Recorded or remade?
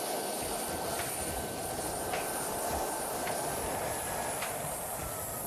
remade